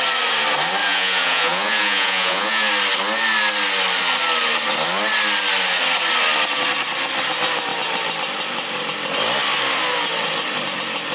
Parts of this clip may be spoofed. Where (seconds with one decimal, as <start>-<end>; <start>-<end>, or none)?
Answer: 0.8-2.7